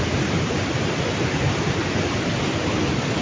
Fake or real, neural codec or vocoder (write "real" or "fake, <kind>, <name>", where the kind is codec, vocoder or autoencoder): real